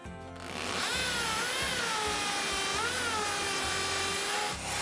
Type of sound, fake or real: real